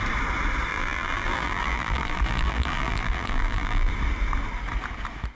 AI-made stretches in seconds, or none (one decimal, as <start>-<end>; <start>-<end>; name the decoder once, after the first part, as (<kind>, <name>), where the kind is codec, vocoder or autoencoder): 0.7-3.9 (vocoder, BigVGAN v2)